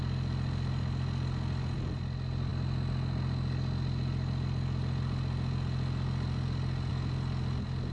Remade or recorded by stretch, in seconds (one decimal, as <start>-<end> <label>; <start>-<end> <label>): 0.0-7.9 recorded